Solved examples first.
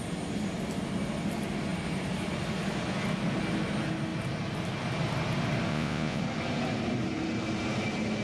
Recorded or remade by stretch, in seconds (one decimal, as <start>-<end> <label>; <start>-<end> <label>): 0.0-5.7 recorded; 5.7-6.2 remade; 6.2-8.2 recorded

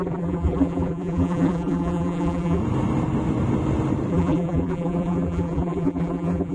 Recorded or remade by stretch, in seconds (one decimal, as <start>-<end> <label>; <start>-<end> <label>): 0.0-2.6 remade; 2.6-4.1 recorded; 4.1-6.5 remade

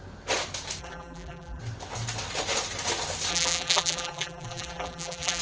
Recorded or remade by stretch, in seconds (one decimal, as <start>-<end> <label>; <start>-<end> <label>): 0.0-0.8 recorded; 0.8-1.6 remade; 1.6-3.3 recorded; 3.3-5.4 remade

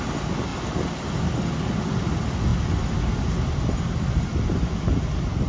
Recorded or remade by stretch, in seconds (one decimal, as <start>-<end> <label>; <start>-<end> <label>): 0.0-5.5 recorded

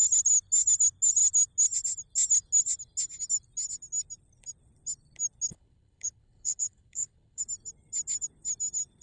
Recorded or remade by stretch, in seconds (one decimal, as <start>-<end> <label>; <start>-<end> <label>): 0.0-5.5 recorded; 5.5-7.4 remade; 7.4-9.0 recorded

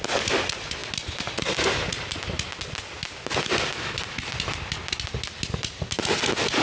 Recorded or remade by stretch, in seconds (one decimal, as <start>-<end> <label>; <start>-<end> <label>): 0.0-6.6 recorded

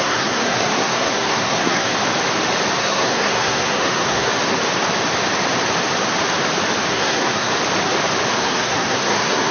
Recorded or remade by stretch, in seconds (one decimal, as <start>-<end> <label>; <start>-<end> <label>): 0.0-1.9 remade; 1.9-2.8 recorded; 2.8-4.3 remade; 4.3-6.9 recorded; 6.9-7.5 remade; 7.5-8.4 recorded; 8.4-9.5 remade